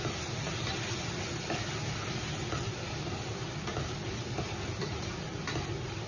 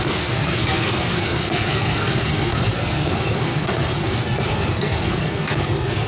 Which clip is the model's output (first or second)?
second